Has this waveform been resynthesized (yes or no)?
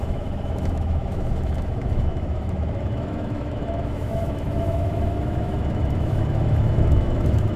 yes